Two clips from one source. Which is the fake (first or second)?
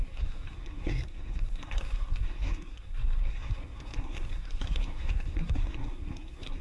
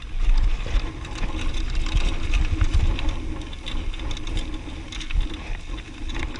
first